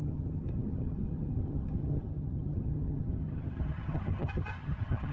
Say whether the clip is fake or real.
fake